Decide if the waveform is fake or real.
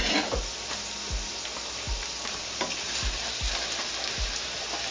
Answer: real